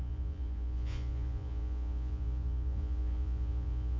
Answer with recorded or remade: remade